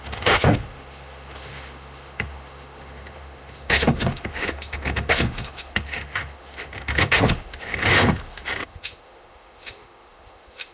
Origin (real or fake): fake